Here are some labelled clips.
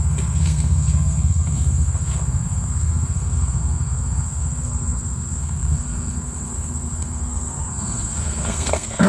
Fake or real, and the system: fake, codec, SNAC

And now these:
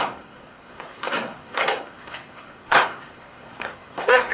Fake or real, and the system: fake, codec, SNAC